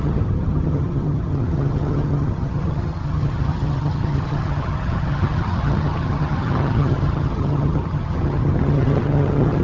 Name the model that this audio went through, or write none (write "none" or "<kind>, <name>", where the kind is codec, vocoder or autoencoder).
vocoder, HiFi-GAN